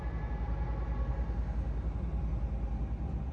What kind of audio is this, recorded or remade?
recorded